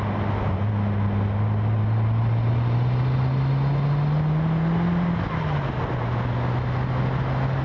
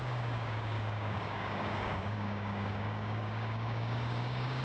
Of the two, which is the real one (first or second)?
first